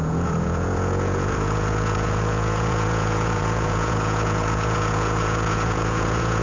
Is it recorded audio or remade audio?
remade